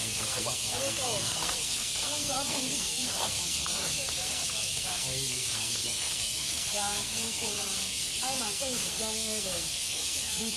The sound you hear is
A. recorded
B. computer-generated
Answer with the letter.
B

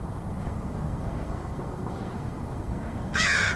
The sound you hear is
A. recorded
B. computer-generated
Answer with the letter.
B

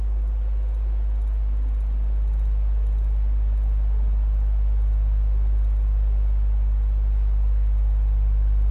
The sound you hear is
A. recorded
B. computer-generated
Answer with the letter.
A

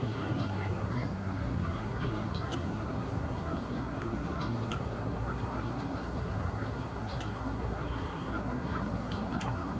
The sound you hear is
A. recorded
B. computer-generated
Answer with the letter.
B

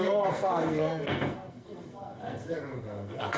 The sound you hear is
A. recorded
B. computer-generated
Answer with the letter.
B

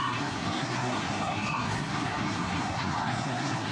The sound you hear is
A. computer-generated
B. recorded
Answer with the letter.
A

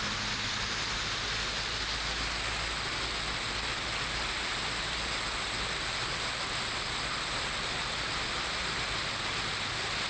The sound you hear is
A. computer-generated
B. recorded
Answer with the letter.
B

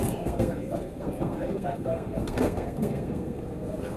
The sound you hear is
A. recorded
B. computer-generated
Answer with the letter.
B